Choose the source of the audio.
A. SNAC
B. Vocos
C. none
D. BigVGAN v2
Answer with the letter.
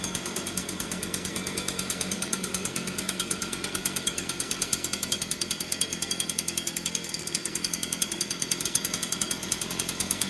A